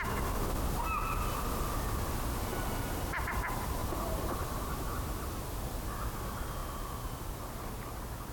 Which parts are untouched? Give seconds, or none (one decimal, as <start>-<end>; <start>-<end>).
0.0-2.5; 3.3-3.8; 4.4-8.3